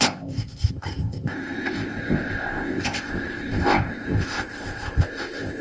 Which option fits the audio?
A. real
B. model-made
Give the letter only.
B